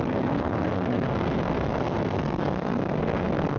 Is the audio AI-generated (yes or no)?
yes